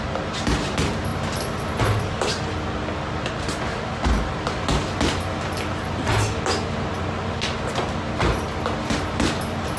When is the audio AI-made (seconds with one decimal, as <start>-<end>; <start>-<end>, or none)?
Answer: none